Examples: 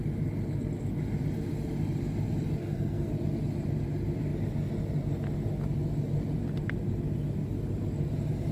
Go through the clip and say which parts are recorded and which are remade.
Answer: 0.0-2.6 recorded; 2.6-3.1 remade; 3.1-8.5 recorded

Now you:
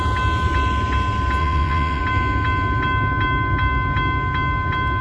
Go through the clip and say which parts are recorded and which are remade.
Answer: 0.0-1.4 recorded; 1.4-2.0 remade; 2.0-5.0 recorded